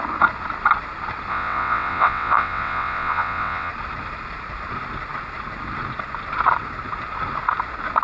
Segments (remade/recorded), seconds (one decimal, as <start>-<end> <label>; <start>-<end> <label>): 0.0-1.3 recorded; 1.3-3.7 remade; 3.7-8.0 recorded